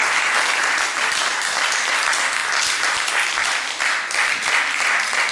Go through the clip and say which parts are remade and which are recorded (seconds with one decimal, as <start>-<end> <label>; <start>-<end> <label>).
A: 0.0-5.3 recorded